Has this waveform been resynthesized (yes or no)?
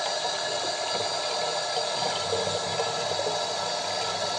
no